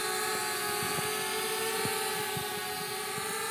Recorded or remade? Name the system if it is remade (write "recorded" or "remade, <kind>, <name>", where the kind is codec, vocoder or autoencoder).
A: recorded